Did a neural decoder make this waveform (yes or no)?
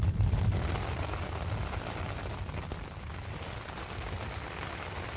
no